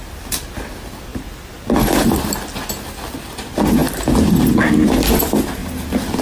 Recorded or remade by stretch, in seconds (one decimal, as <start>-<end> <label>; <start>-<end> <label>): 0.0-5.6 recorded; 5.6-6.2 remade